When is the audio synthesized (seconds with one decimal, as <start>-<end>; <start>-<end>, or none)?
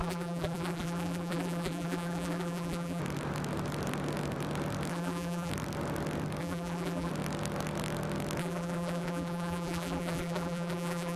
0.0-3.0; 4.9-5.5; 6.4-7.1; 8.4-11.2